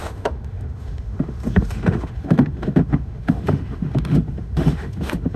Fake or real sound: fake